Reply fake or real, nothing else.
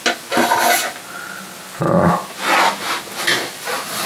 real